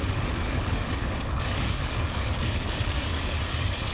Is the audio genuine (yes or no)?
no